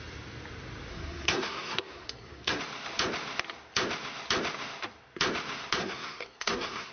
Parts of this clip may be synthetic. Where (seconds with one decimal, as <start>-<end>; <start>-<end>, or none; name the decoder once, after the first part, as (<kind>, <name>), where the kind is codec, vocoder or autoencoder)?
0.9-2.6 (codec, SNAC); 5.8-6.9